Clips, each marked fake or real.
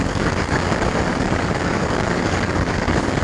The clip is fake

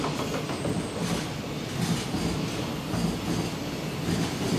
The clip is real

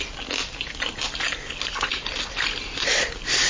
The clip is real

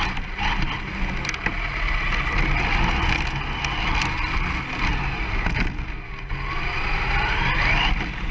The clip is real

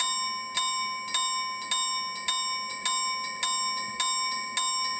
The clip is real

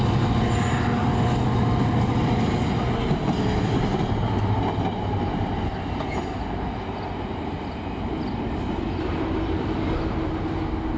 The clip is real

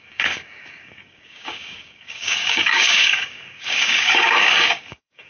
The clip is fake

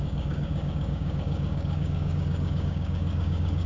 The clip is fake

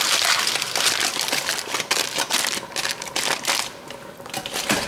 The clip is real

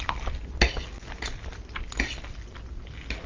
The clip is real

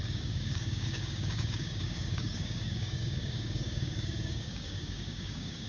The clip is fake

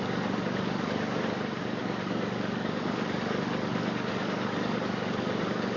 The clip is fake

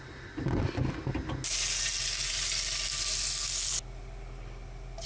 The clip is real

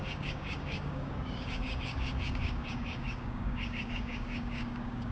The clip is fake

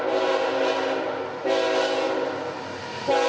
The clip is real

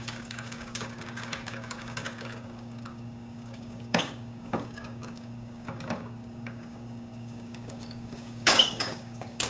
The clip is fake